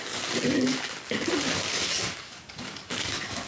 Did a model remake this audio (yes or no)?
yes